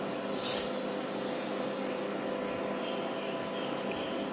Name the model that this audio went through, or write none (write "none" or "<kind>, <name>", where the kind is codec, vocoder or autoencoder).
none